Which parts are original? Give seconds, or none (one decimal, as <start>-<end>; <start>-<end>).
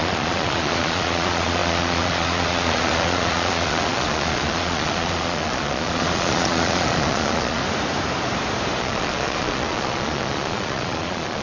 7.6-8.8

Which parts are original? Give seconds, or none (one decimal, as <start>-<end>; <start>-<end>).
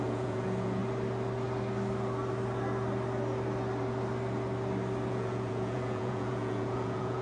0.8-5.1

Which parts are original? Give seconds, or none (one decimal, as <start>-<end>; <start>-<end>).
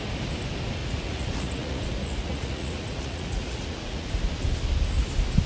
0.0-0.8; 4.1-5.5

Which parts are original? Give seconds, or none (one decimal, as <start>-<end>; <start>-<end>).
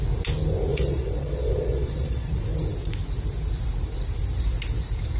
0.0-0.7; 2.3-5.2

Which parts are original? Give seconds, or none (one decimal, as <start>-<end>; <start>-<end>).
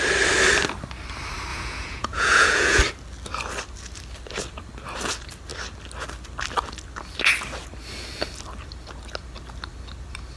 0.0-1.5; 2.8-10.4